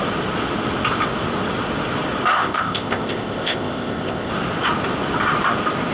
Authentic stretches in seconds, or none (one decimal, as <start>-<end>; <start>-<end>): 0.0-2.3; 4.3-5.9